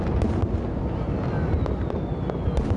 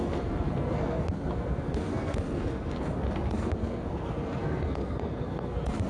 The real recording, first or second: first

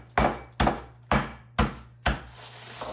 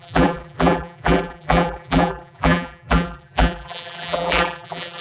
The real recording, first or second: first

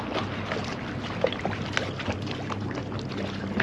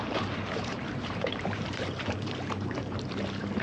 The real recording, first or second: first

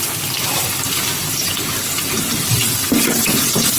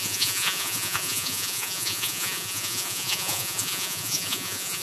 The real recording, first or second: first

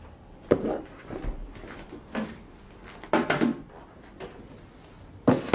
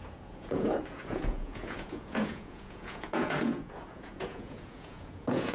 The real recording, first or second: first